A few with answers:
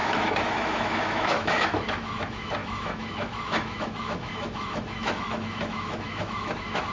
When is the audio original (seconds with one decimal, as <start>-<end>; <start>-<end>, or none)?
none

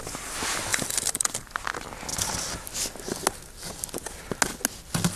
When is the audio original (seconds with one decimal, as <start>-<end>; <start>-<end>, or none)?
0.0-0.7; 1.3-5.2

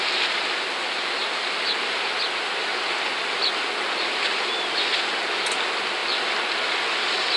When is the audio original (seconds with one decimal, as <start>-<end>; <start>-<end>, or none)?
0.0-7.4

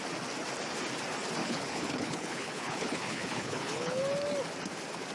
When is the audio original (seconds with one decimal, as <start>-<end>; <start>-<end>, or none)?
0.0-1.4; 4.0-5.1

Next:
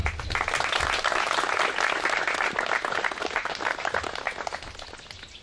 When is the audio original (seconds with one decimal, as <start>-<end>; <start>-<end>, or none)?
0.0-5.4

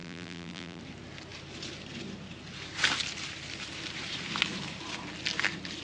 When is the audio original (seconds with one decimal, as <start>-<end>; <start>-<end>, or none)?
0.8-5.8